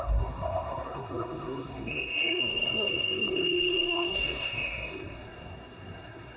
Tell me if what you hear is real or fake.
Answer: fake